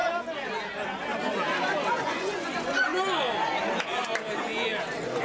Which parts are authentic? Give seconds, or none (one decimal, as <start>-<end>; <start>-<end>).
0.0-1.9; 2.9-5.2